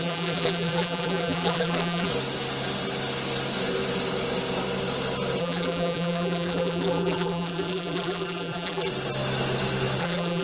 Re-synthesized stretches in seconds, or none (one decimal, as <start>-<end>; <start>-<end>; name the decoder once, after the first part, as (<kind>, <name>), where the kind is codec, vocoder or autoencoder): 0.0-2.1 (vocoder, BigVGAN v2); 5.4-8.9; 10.0-10.4